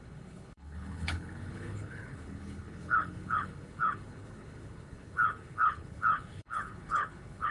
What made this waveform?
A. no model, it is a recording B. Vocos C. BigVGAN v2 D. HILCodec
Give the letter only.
D